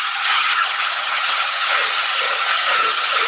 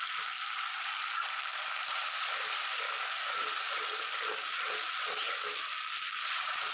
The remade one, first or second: first